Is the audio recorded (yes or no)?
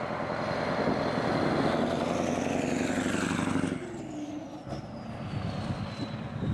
yes